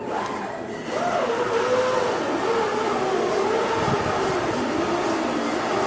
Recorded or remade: recorded